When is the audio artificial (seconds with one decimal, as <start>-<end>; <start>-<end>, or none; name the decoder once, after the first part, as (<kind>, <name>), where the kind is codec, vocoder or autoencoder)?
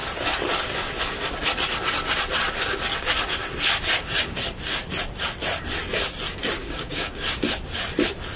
6.6-7.4 (codec, DAC)